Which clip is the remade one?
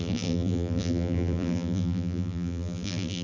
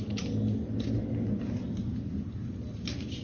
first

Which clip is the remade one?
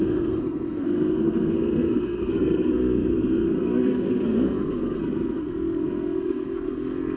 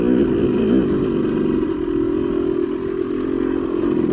first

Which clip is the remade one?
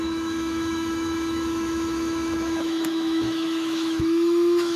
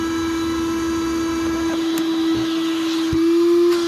first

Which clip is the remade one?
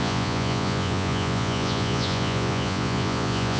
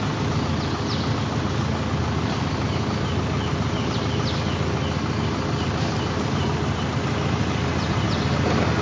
first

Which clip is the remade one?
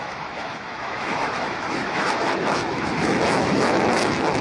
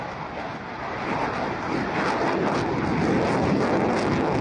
first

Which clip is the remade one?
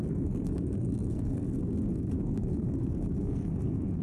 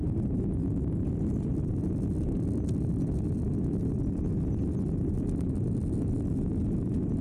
first